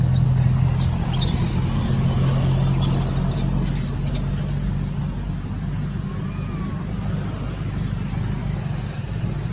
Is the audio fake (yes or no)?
no